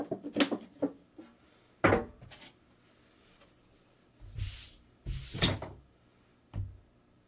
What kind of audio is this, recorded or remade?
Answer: recorded